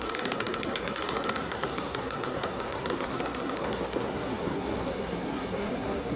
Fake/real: fake